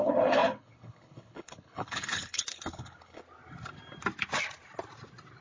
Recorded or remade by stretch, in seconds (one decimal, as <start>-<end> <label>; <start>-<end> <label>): 0.0-3.2 remade; 3.2-5.4 recorded